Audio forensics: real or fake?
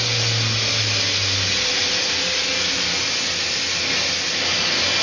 real